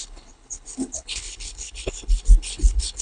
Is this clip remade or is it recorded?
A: remade